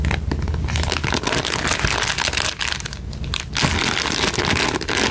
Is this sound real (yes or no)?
yes